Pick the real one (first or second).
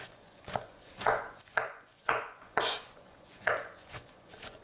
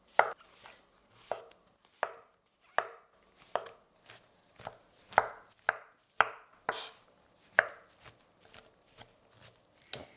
second